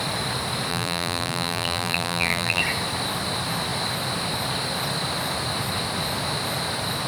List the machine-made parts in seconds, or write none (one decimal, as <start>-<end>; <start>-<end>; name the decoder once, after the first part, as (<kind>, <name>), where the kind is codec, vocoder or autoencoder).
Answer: 0.7-2.6 (vocoder, BigVGAN v2)